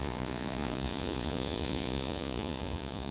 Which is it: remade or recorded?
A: remade